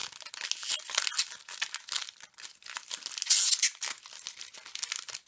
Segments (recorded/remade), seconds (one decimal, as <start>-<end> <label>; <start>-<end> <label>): 0.0-5.3 recorded